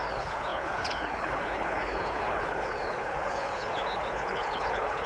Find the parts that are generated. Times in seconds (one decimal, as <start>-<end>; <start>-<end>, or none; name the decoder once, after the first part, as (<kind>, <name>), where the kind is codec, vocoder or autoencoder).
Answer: 0.0-5.1 (codec, HILCodec)